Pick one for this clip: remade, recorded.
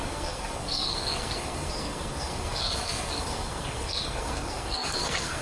remade